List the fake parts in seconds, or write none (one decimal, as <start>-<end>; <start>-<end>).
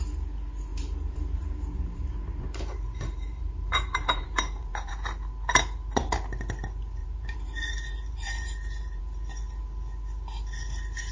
0.7-4.9; 7.0-9.0